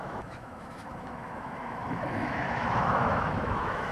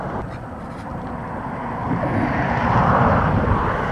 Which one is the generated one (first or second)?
first